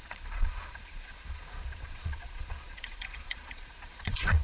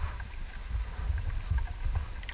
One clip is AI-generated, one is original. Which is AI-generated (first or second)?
first